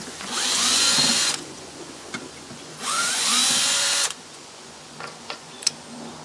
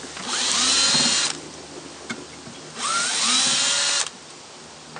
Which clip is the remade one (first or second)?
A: first